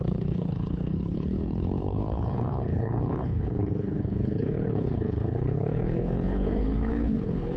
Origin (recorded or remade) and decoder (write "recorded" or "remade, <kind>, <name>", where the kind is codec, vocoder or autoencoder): remade, codec, HILCodec